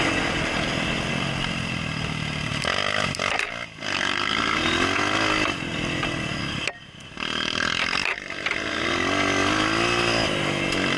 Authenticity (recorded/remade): recorded